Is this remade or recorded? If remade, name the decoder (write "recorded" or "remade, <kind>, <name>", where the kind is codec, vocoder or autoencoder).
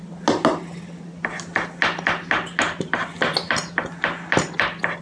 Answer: recorded